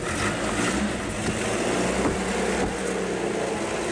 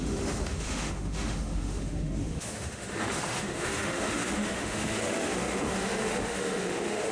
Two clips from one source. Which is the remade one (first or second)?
second